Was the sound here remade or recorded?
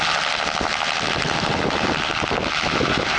recorded